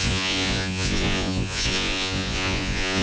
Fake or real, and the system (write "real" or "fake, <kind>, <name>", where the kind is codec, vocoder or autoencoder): fake, vocoder, Vocos